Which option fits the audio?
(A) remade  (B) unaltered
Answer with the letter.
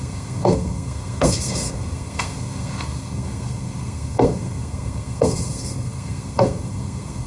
A